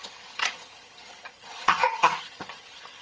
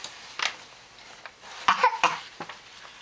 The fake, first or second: first